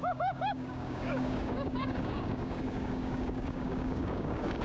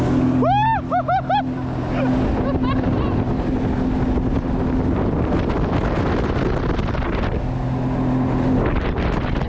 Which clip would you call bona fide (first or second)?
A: second